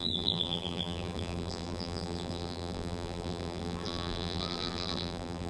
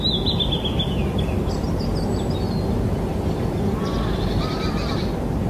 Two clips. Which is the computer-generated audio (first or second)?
first